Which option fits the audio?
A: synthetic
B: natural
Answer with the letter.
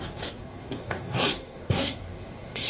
A